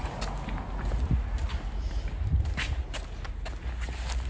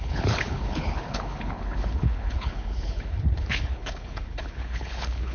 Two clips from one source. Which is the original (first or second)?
first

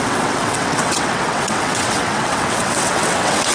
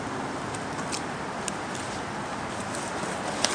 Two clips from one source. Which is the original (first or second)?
second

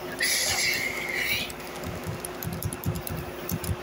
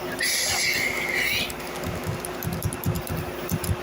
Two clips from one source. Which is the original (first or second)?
second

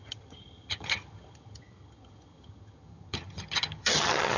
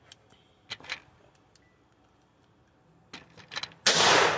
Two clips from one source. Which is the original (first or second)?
second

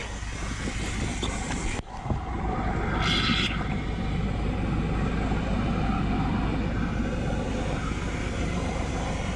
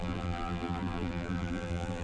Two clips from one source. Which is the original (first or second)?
first